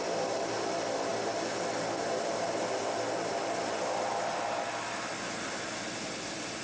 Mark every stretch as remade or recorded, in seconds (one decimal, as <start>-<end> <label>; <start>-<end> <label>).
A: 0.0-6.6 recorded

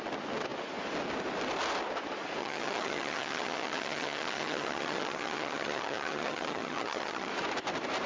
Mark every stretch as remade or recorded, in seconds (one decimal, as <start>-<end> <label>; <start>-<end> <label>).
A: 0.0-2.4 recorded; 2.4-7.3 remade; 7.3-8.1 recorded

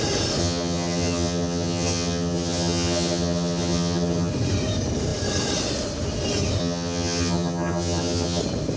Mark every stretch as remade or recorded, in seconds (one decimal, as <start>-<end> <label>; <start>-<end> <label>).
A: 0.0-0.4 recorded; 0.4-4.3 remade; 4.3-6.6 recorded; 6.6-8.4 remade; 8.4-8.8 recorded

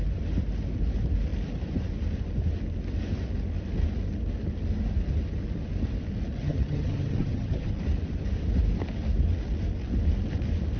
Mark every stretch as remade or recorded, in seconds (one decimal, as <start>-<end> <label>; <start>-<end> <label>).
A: 0.0-6.4 recorded; 6.4-7.7 remade; 7.7-10.8 recorded

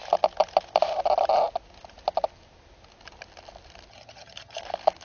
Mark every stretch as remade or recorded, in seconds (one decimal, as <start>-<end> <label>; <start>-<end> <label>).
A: 0.0-3.9 recorded; 3.9-4.6 remade; 4.6-5.0 recorded